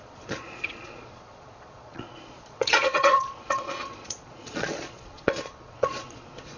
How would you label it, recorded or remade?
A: remade